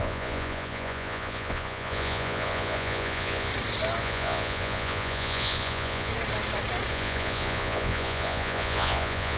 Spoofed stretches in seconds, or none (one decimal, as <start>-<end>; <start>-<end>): 0.0-3.5; 4.0-6.1; 6.9-9.4

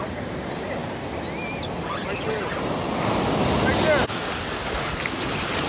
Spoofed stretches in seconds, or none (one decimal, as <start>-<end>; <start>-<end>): none

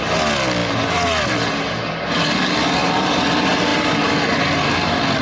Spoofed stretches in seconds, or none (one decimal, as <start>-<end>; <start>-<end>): none

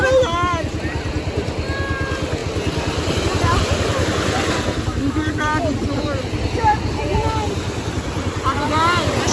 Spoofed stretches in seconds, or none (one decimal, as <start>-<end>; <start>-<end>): none